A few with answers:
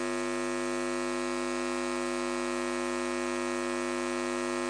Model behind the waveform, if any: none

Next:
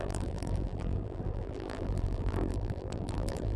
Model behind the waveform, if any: vocoder, BigVGAN v2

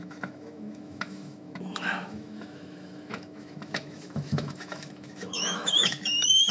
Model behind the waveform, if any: autoencoder, DAC-VAE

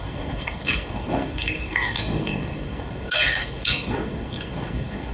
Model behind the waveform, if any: codec, SNAC